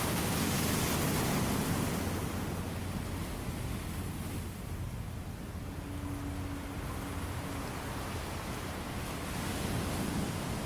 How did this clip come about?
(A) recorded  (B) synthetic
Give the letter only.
A